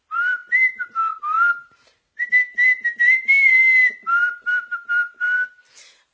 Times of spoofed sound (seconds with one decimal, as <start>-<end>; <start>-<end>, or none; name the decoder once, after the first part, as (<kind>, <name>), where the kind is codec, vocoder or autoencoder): 0.0-3.6 (vocoder, BigVGAN v2); 4.2-6.1